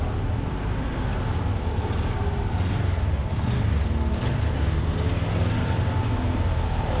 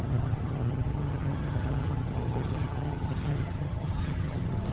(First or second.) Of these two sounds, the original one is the first